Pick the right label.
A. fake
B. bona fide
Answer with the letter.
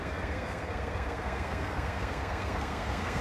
A